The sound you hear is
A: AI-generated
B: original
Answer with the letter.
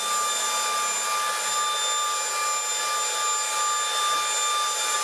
B